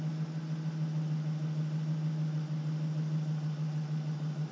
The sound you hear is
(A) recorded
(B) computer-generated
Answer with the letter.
A